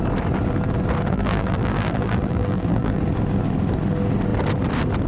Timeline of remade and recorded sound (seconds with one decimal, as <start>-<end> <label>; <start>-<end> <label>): 0.0-1.1 recorded; 1.1-3.0 remade; 3.0-5.1 recorded